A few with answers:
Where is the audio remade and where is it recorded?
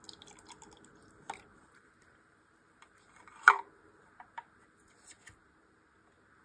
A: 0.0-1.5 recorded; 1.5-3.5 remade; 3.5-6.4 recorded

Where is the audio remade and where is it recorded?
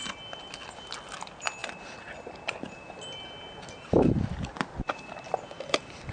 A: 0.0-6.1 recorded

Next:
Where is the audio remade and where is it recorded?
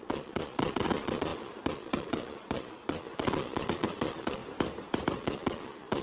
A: 0.0-4.4 remade; 4.4-5.2 recorded; 5.2-6.0 remade